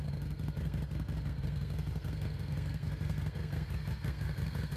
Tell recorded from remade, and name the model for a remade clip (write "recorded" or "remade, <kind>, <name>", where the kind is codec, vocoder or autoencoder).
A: remade, codec, SNAC